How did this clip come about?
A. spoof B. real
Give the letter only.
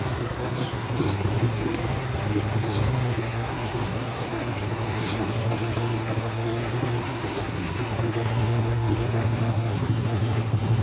A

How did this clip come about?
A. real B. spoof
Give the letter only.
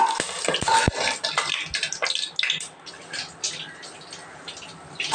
A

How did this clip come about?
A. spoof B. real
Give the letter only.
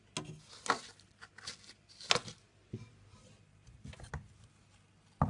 B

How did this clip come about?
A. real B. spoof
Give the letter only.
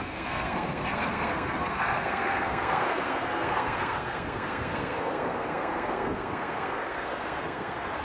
B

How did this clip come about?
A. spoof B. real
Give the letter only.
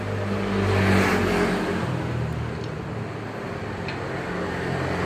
B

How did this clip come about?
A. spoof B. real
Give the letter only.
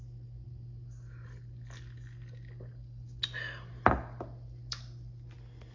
B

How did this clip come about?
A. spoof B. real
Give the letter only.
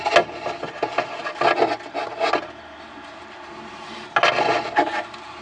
B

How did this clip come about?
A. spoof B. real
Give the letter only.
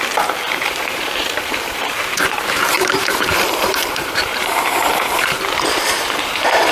A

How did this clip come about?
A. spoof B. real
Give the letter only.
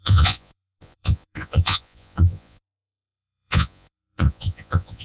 A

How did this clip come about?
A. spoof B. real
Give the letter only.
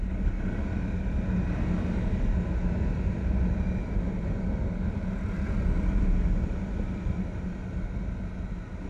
B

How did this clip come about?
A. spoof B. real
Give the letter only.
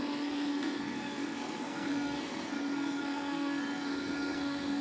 A